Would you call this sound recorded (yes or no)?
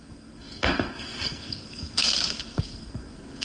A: no